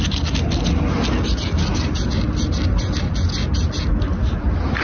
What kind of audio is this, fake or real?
real